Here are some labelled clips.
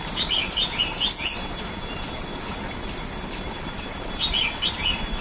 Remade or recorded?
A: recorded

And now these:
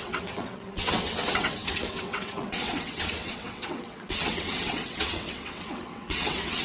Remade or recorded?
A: remade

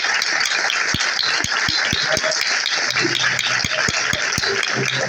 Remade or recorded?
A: recorded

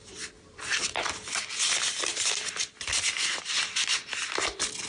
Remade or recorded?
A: recorded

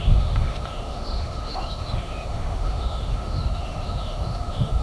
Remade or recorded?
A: remade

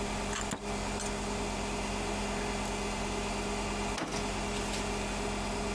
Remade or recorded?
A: recorded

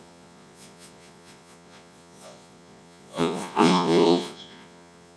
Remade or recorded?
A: remade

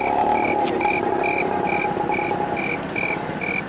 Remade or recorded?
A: recorded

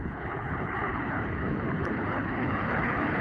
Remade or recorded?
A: remade